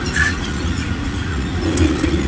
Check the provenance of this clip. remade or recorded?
remade